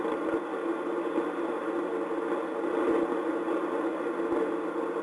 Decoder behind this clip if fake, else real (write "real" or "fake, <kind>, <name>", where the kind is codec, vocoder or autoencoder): real